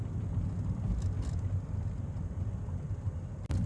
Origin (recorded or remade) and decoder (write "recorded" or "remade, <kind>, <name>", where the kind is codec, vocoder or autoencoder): recorded